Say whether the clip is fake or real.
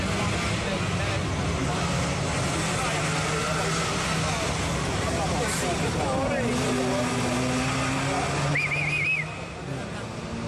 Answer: real